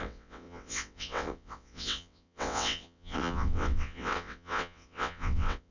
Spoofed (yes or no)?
yes